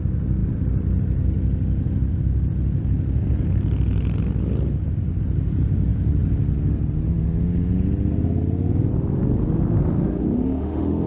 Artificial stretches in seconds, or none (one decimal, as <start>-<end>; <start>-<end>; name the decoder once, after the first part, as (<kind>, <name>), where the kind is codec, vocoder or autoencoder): 10.2-11.1 (autoencoder, DAC-VAE)